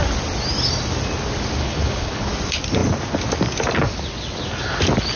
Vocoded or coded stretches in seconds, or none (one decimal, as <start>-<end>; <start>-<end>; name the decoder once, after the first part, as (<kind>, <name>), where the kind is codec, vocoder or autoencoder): 1.6-2.3 (codec, HILCodec)